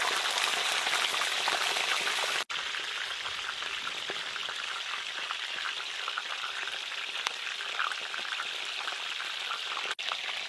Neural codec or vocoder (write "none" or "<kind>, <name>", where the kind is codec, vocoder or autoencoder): none